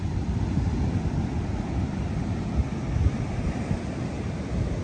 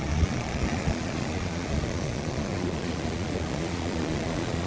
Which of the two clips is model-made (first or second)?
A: second